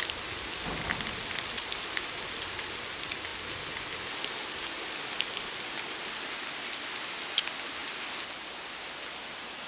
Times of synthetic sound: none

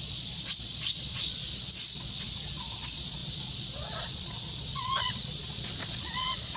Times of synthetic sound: 0.0-6.6 (vocoder, Vocos)